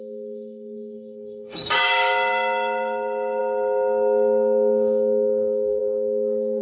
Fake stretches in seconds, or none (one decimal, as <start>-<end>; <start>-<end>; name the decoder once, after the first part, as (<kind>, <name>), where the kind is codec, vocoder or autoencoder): 0.0-5.8 (codec, DAC)